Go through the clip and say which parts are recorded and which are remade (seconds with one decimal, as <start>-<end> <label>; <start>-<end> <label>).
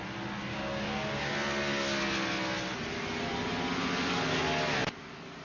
0.0-0.5 recorded; 0.5-1.3 remade; 1.3-5.4 recorded